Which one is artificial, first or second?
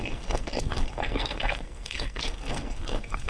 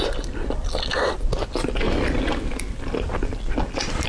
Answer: first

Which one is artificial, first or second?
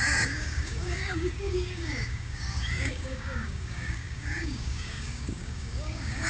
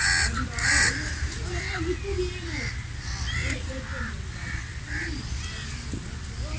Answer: first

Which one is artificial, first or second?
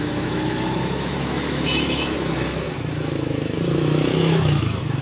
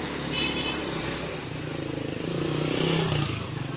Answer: first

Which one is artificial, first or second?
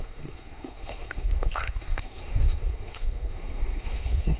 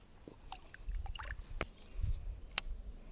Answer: first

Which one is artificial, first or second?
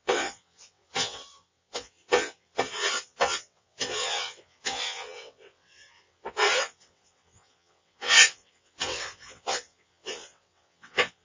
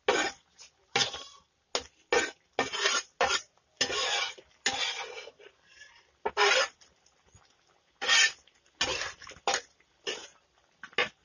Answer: first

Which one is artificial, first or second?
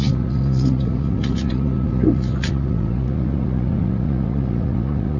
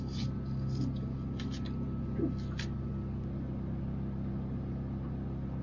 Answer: first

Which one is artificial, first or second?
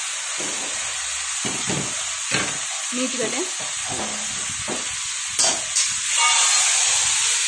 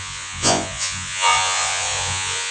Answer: second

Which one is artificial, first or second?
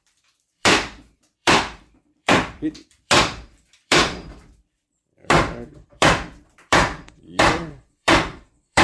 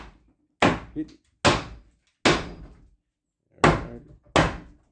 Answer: first